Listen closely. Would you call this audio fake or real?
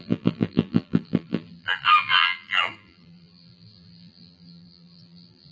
fake